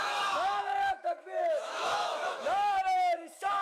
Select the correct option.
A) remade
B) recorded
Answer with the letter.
A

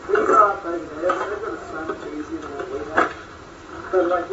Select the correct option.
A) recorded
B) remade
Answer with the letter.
A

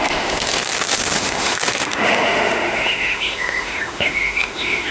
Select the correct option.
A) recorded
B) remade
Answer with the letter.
B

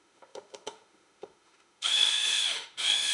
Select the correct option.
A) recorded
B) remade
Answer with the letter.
B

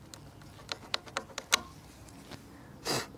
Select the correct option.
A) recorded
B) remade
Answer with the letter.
A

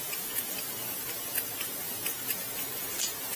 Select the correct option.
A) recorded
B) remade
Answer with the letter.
A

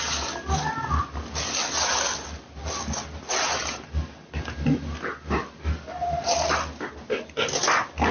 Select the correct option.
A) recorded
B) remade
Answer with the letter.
A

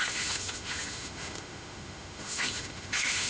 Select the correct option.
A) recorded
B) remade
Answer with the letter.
B